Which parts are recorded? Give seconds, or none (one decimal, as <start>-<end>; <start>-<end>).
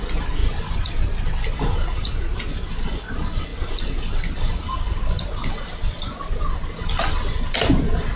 0.0-8.2